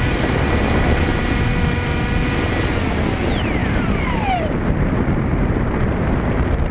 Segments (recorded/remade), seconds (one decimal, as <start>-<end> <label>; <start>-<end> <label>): 0.0-1.1 remade; 1.1-2.5 recorded; 2.5-6.7 remade